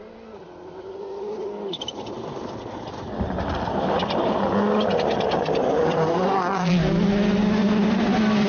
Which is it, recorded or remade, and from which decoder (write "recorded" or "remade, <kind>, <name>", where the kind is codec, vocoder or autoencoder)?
recorded